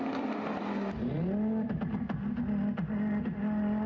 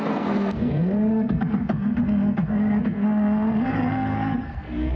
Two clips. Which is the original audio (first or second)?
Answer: first